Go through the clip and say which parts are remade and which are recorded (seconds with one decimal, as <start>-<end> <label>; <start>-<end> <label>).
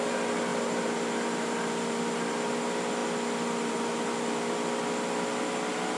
0.0-6.0 recorded